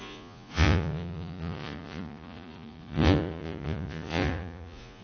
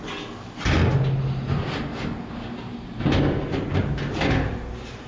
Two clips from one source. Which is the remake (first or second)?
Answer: first